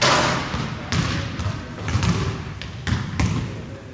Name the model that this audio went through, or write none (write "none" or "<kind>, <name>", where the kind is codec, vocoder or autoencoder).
none